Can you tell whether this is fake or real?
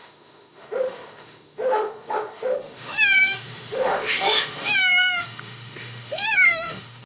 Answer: fake